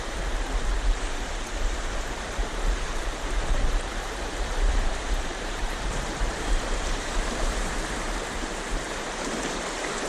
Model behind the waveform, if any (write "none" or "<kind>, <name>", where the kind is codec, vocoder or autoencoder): vocoder, BigVGAN v2